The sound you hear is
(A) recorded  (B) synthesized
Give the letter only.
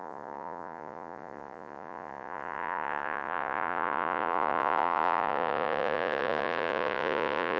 B